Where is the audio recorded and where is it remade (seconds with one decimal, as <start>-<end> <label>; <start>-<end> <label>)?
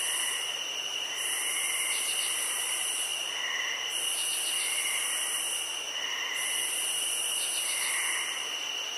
0.0-9.0 remade